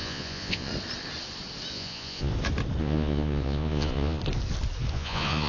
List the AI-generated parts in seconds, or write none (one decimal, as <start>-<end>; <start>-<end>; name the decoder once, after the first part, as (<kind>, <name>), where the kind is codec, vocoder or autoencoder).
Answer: 0.0-0.7 (vocoder, Vocos); 1.7-2.3; 2.8-4.2; 4.9-5.5